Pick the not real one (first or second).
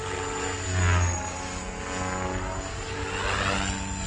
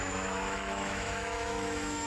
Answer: second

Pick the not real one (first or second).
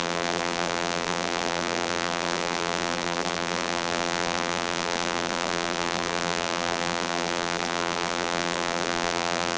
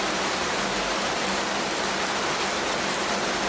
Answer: first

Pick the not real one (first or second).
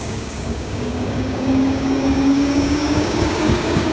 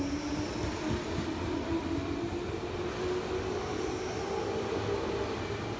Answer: first